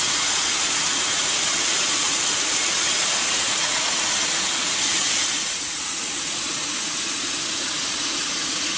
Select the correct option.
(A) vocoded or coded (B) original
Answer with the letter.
A